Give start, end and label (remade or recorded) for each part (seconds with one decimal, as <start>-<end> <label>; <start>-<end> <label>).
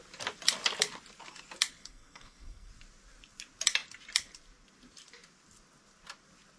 0.0-1.8 recorded; 1.8-2.7 remade; 2.7-6.6 recorded